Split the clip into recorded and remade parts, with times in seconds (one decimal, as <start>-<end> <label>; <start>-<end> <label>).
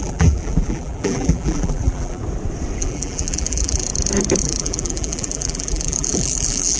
0.0-2.2 remade; 2.2-2.8 recorded; 2.8-3.9 remade; 3.9-4.4 recorded; 4.4-6.8 remade